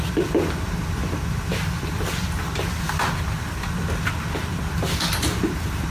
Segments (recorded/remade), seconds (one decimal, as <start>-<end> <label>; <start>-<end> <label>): 0.0-5.9 recorded